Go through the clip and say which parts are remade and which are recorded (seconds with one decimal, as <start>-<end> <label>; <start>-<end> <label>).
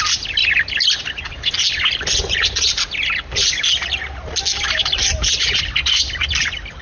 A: 0.0-6.8 recorded